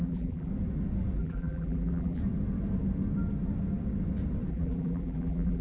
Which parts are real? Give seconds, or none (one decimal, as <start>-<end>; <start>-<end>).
0.5-1.2; 2.2-4.5